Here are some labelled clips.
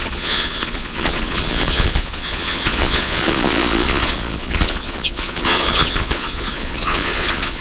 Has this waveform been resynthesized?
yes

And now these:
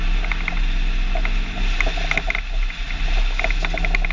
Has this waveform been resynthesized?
no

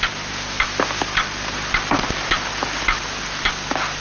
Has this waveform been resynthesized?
no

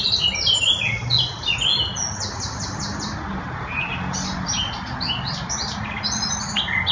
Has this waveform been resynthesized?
no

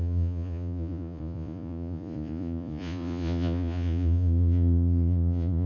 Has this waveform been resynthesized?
yes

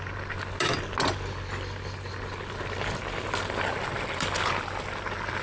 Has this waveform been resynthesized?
no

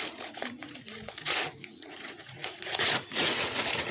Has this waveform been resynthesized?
yes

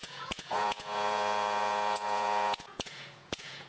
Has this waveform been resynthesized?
yes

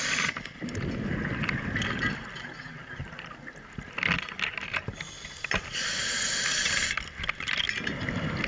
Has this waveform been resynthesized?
no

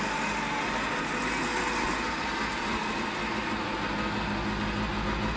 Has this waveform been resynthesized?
no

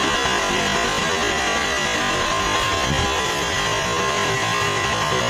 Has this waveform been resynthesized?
no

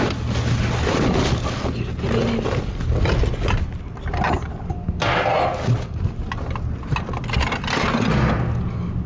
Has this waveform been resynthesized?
no